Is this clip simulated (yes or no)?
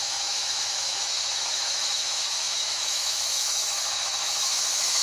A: yes